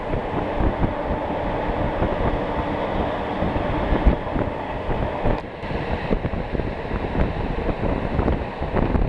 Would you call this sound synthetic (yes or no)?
no